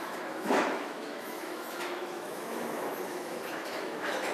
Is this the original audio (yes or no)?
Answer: no